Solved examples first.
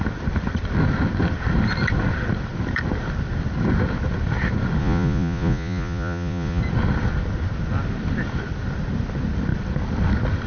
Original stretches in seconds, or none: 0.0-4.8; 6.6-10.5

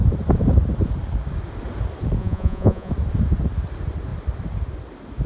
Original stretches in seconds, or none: 0.0-2.2; 2.9-5.3

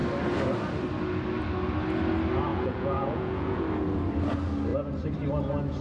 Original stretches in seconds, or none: 0.0-2.5; 3.6-5.8

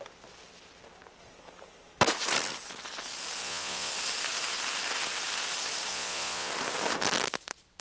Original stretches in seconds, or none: 0.0-3.4; 3.9-5.9; 6.5-7.8

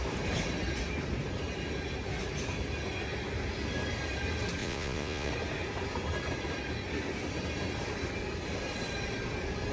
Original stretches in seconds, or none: 0.0-4.6; 5.3-9.7